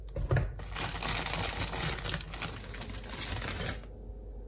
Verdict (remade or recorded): recorded